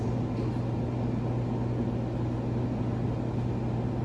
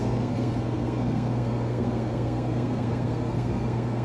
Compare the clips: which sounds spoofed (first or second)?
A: second